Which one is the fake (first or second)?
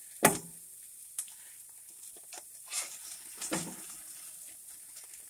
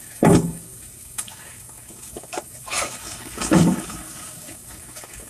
second